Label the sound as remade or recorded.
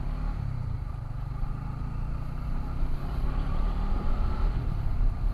remade